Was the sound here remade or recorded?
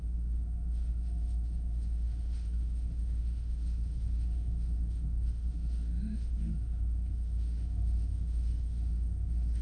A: remade